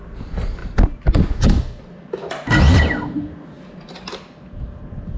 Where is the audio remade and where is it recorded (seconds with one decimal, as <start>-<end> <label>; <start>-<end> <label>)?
0.0-5.2 recorded